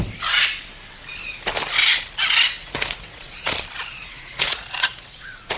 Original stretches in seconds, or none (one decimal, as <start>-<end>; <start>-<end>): 0.0-2.6; 3.5-4.0